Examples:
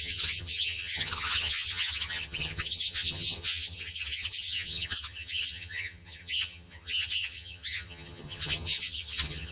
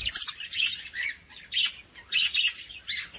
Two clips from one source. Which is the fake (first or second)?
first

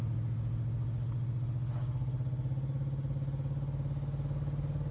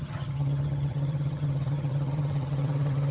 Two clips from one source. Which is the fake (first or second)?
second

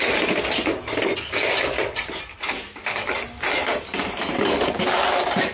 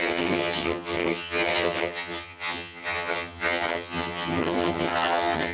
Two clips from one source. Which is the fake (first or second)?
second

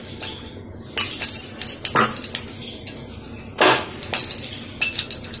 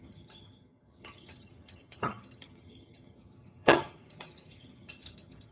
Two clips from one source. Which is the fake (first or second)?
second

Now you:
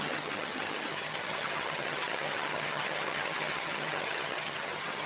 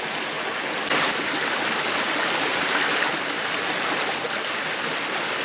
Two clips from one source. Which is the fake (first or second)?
first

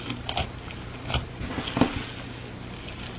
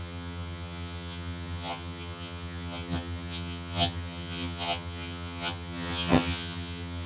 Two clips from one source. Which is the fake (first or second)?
second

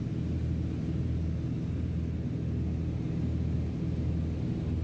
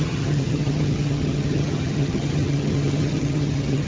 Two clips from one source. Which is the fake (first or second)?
second